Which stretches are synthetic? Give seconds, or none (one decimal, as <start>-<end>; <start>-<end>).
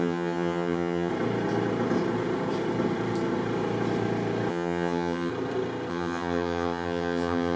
0.0-1.1; 4.5-5.3; 5.9-7.6